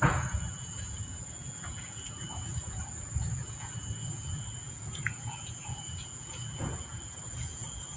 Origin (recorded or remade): remade